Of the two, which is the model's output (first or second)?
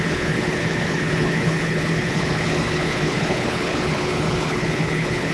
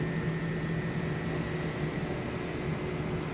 first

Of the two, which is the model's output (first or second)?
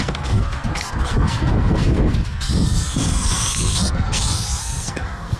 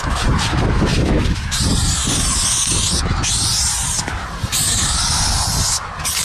first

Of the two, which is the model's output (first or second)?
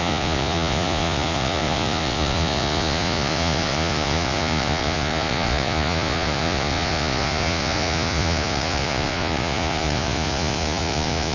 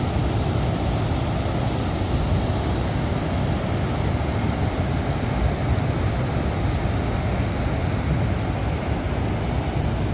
first